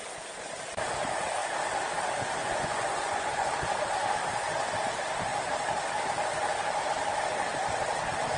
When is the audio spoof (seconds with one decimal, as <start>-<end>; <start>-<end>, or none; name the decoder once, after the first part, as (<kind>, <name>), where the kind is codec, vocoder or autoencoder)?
2.4-3.5 (vocoder, Vocos)